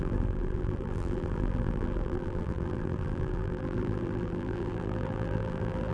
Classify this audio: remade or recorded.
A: remade